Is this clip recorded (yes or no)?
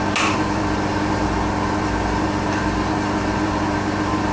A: yes